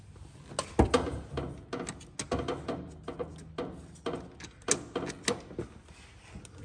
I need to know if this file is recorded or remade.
recorded